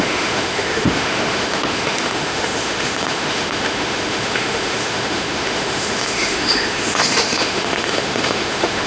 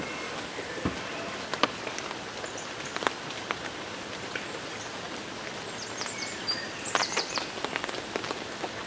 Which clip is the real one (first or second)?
second